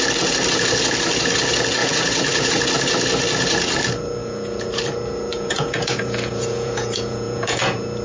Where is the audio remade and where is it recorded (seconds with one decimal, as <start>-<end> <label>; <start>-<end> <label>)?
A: 0.0-1.8 recorded; 1.8-2.5 remade; 2.5-4.2 recorded; 4.2-4.8 remade; 4.8-5.3 recorded; 5.3-7.6 remade; 7.6-8.0 recorded